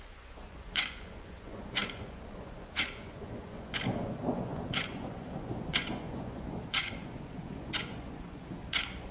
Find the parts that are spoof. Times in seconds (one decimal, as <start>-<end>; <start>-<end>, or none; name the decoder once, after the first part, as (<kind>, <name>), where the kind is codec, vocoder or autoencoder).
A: 0.0-9.1 (vocoder, Vocos)